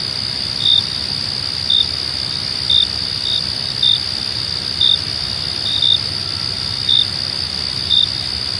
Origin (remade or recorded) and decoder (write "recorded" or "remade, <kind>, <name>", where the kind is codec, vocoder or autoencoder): recorded